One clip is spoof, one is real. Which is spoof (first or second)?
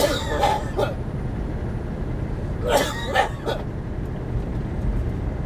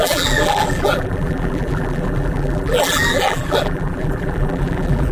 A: second